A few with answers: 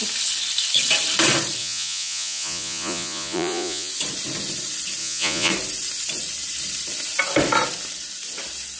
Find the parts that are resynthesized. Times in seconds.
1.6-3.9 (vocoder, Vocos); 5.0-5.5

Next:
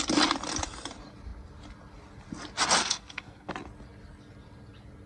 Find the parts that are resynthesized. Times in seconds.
2.8-3.5 (codec, SNAC)

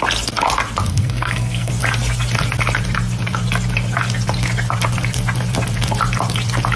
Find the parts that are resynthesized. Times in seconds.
0.9-1.7 (codec, SNAC)